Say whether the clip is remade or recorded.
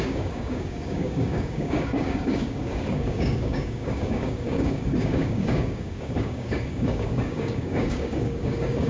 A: remade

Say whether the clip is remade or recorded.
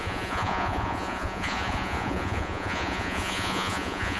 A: remade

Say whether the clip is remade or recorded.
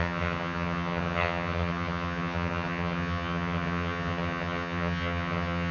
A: remade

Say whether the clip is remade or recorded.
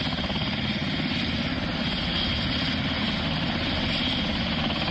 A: recorded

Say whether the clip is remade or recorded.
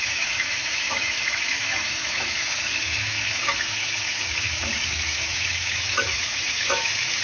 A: remade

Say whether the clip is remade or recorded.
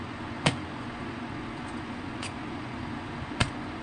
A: remade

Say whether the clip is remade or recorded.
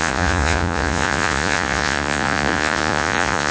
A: remade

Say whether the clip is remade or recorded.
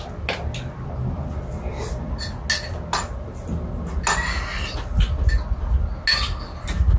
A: recorded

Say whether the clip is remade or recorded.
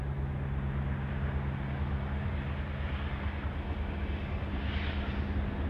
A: recorded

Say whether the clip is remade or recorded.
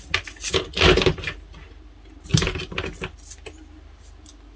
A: recorded